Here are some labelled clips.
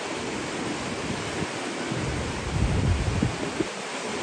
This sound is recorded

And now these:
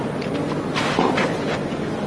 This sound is recorded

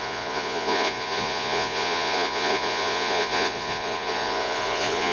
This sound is remade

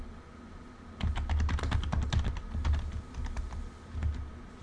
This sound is recorded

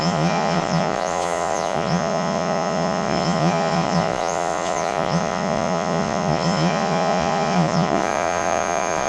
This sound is remade